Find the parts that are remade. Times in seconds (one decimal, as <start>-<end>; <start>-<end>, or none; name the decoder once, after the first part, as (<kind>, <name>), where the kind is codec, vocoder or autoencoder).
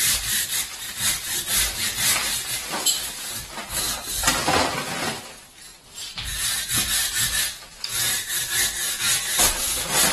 0.0-3.6 (vocoder, BigVGAN v2); 4.1-10.1